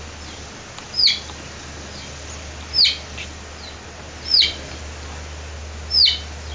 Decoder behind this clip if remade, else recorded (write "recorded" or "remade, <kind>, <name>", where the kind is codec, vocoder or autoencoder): recorded